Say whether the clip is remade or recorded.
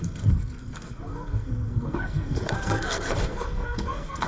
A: remade